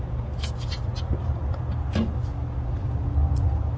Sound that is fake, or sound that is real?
real